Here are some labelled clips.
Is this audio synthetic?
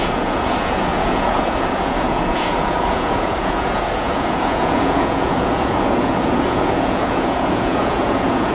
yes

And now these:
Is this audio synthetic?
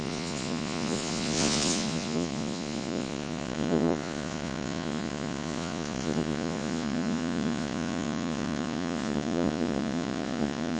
yes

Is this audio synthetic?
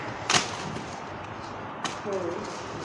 no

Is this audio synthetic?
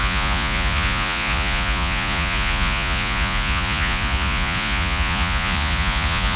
yes